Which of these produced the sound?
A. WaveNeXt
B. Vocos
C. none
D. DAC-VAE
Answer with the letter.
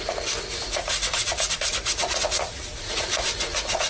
B